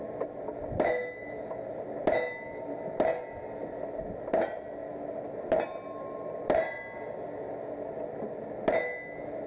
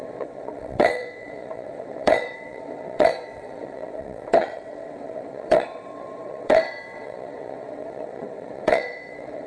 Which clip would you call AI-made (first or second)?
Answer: second